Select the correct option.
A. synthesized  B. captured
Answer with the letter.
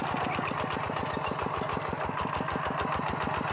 B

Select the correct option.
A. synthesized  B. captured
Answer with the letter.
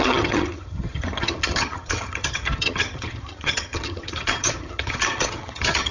A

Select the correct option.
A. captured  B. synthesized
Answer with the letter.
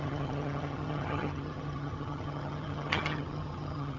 B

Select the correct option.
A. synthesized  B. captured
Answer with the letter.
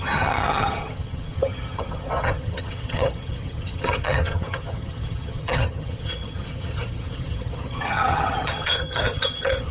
A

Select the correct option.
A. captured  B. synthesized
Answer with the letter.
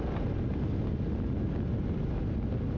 A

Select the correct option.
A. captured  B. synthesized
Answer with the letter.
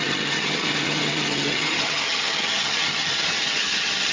B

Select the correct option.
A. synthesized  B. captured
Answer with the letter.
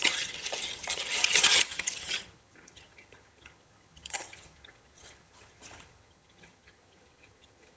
A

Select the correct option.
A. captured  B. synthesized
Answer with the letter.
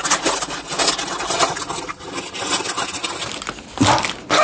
A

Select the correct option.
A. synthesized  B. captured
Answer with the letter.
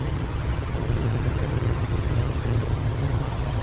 A